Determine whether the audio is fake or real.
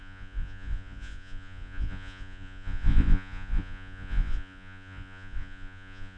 fake